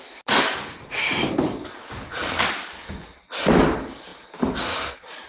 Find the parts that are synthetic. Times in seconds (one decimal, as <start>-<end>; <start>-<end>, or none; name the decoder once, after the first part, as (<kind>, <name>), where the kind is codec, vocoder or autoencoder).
none